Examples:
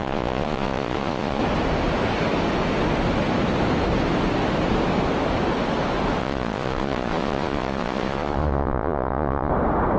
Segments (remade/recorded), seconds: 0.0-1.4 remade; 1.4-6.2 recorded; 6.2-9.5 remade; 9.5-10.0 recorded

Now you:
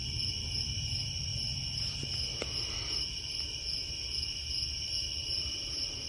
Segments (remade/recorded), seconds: 0.0-0.6 recorded; 0.6-1.3 remade; 1.3-5.0 recorded; 5.0-6.1 remade

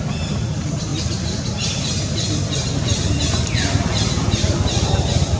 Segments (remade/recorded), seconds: 0.0-5.4 recorded